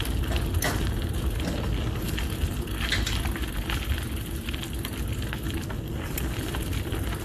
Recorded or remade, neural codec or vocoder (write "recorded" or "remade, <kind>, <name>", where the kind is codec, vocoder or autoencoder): recorded